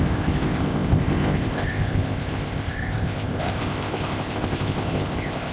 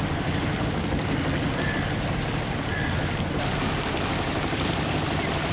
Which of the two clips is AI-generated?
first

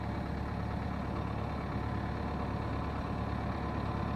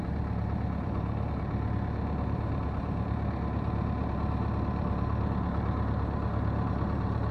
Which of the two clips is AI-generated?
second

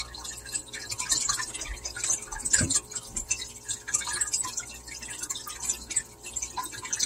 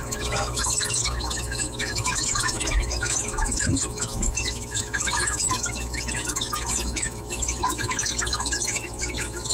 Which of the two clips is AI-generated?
second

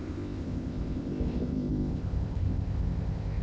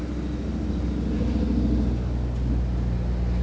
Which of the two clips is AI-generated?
first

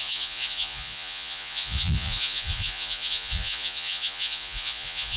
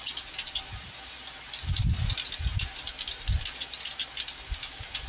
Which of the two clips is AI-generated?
first